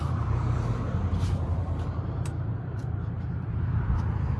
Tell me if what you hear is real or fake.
fake